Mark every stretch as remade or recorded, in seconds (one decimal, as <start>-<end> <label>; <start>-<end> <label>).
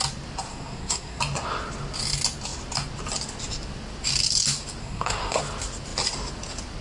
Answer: 0.0-0.5 recorded; 0.5-1.2 remade; 1.2-4.8 recorded; 4.8-5.4 remade; 5.4-6.8 recorded